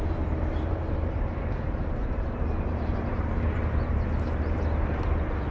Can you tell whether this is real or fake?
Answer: fake